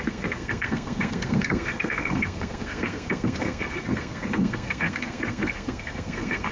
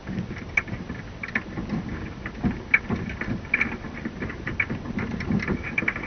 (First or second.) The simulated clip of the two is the first